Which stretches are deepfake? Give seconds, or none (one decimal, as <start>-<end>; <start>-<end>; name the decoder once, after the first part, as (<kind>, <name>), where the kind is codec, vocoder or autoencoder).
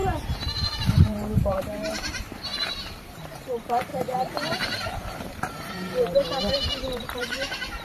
0.0-7.8 (vocoder, BigVGAN v2)